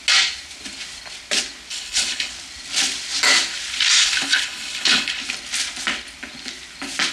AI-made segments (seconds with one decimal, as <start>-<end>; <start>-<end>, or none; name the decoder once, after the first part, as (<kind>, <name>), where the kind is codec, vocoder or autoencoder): 1.7-2.3 (codec, HILCodec); 4.0-5.2